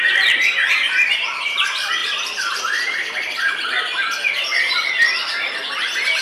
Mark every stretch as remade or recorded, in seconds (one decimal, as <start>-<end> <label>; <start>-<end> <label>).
0.0-2.0 recorded; 2.0-3.8 remade; 3.8-4.5 recorded; 4.5-5.6 remade; 5.6-6.2 recorded